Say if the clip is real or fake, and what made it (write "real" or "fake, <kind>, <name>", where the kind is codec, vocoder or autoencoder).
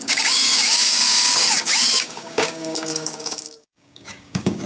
fake, codec, DAC